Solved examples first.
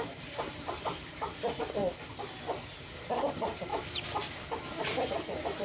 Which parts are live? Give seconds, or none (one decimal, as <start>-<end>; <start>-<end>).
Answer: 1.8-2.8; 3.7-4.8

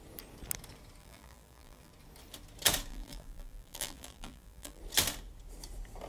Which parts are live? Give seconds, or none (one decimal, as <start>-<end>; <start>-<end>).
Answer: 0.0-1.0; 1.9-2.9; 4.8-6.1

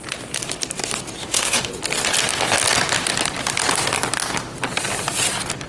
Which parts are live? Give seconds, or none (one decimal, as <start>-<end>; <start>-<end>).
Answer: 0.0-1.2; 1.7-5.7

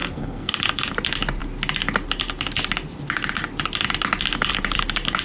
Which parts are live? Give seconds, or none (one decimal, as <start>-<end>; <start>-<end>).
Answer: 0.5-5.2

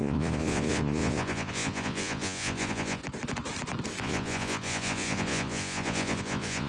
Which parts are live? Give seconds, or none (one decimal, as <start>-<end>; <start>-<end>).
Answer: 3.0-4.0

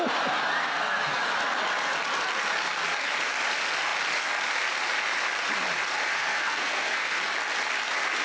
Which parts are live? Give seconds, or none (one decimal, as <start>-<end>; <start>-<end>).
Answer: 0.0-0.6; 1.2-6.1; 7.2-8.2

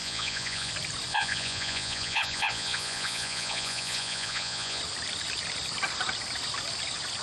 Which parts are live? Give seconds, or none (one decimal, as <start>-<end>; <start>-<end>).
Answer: 0.7-1.1; 4.8-7.2

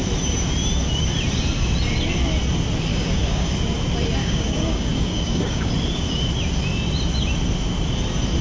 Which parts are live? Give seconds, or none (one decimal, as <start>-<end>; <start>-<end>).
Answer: 0.0-2.9; 3.5-4.2; 5.7-8.4